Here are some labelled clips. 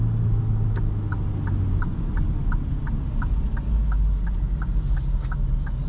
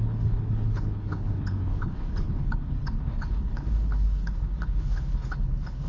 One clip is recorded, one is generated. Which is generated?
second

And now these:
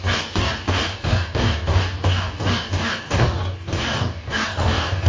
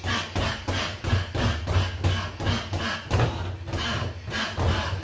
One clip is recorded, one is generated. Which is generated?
first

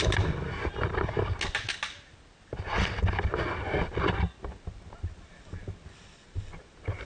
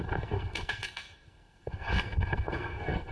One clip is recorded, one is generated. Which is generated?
second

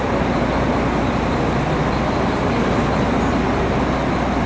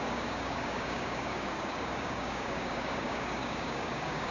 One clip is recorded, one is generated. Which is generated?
second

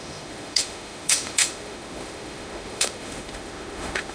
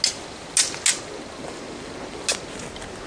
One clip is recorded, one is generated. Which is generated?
first